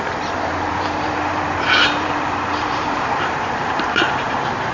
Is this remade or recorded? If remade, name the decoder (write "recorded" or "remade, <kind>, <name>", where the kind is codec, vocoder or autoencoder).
remade, vocoder, BigVGAN v2